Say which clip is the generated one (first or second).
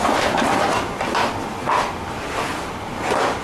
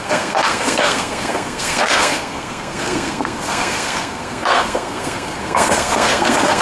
second